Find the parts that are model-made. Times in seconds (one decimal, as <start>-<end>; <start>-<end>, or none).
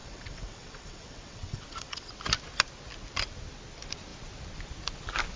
0.0-2.1